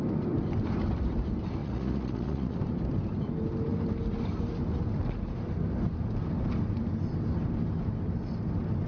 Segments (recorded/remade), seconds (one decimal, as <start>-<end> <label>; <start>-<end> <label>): 0.0-1.6 recorded; 1.6-2.6 remade; 2.6-8.9 recorded